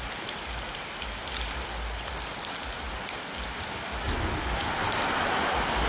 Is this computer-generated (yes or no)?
no